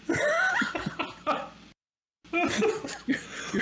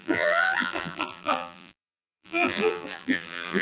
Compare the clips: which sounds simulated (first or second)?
second